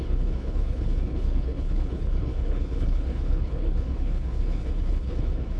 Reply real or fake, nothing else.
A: fake